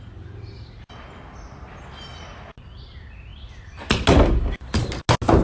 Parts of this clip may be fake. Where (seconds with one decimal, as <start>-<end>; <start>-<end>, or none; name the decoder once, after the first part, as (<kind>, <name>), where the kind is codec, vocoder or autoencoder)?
none